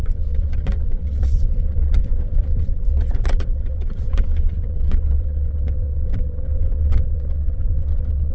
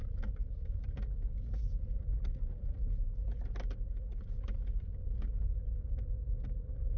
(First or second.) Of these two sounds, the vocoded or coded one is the first